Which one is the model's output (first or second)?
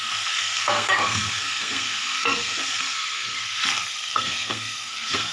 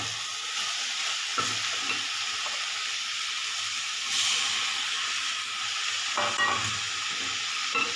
first